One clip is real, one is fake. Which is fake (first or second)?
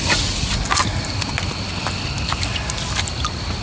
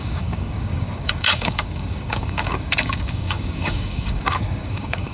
second